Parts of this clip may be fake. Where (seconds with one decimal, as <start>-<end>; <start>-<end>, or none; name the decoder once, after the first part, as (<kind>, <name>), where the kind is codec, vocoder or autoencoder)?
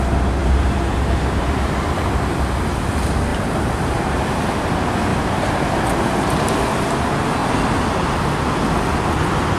0.4-2.2 (vocoder, BigVGAN v2); 3.3-4.3; 5.1-6.5